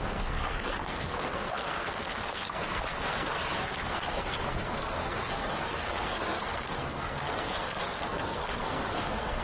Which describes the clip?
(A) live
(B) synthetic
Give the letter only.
B